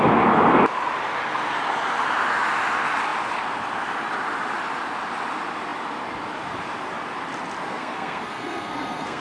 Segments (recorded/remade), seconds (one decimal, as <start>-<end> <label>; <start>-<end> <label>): 0.0-7.7 recorded; 7.7-9.2 remade